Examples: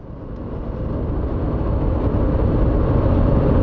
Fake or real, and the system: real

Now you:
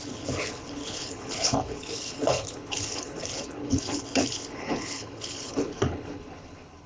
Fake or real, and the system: fake, codec, HILCodec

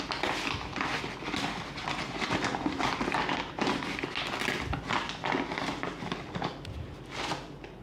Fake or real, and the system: real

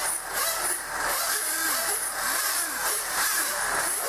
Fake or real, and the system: fake, vocoder, BigVGAN v2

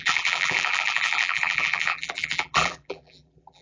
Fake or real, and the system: fake, vocoder, BigVGAN v2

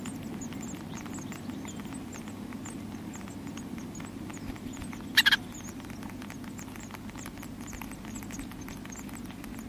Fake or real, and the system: real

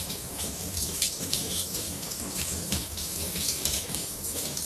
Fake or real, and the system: fake, codec, DAC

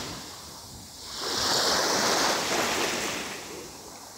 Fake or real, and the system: real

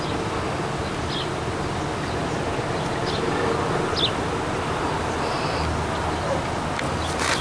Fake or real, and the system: real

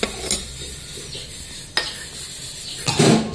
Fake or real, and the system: real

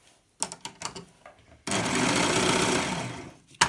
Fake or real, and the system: real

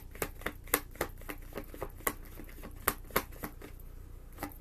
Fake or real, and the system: real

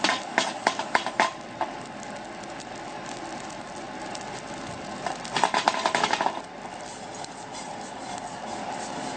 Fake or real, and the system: real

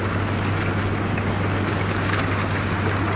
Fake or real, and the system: real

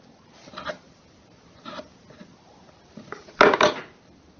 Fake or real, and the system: real